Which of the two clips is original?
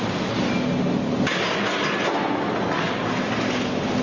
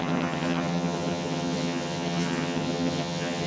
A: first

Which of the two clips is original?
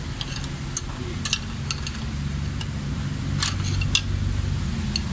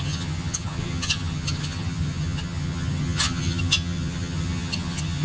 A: first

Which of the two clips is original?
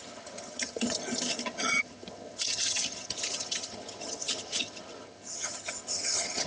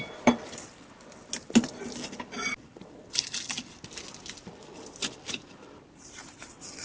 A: second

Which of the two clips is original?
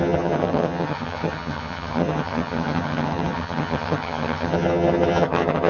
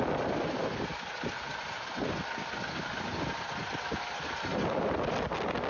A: second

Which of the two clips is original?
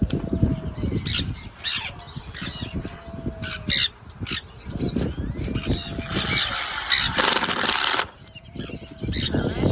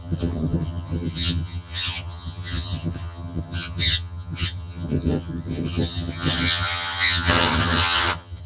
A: first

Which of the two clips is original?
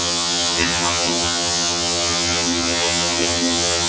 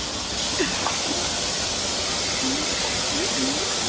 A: second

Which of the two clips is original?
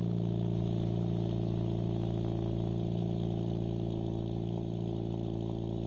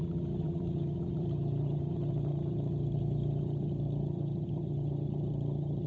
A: first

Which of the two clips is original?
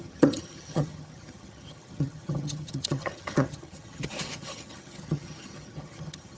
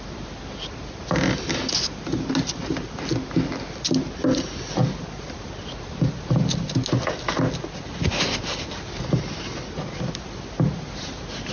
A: second